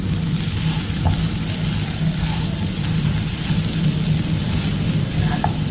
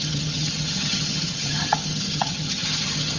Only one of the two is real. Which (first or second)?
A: first